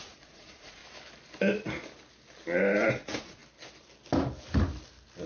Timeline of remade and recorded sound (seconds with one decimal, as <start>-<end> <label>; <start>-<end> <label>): 0.0-0.8 remade; 0.8-2.9 recorded; 2.9-3.4 remade; 3.4-5.3 recorded